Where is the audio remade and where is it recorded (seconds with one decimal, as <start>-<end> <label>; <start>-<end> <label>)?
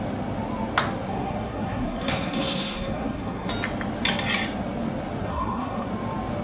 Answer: 0.0-1.1 recorded; 1.1-3.5 remade; 3.5-5.2 recorded; 5.2-5.9 remade; 5.9-6.4 recorded